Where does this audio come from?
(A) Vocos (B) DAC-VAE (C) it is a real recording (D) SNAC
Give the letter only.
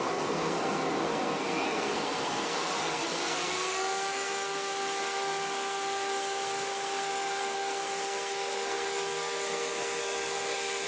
D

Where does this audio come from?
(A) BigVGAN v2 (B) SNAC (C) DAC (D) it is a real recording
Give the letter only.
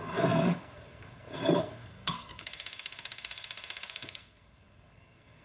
B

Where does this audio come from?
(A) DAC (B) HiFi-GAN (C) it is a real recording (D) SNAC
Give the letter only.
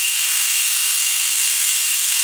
D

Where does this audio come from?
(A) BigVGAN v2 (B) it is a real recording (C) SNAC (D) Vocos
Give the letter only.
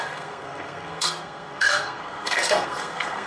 C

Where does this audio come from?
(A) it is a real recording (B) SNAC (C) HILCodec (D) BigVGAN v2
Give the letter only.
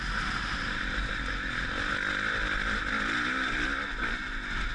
A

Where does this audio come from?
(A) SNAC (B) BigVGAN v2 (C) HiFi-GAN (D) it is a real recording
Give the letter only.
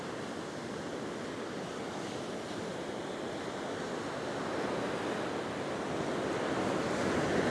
D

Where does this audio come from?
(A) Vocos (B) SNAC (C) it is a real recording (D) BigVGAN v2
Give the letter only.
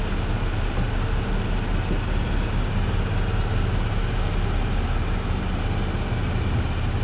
C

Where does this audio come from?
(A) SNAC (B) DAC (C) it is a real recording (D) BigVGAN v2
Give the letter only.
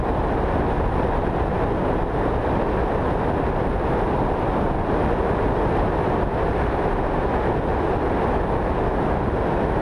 C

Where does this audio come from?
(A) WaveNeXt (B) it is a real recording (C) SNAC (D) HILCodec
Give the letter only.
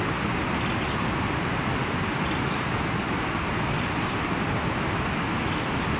B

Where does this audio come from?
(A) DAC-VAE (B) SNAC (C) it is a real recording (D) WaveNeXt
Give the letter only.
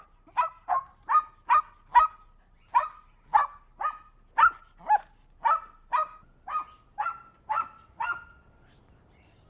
C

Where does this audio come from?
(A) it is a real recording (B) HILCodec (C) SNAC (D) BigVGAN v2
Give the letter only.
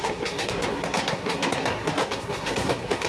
C